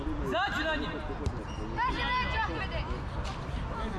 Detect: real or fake real